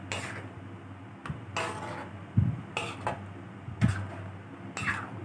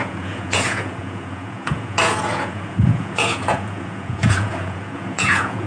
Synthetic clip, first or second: second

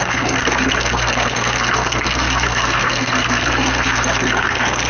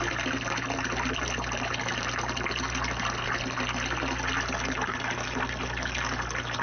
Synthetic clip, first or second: first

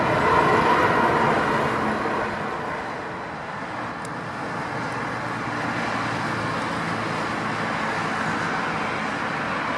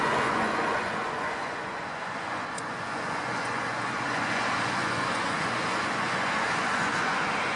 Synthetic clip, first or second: second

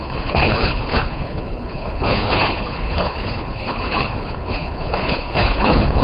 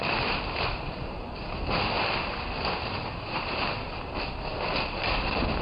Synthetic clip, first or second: first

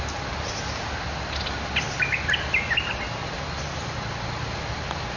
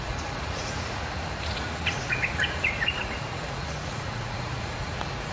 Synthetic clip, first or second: second